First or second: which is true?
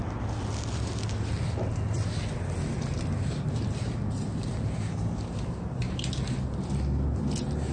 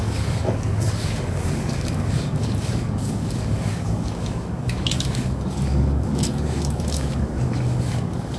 first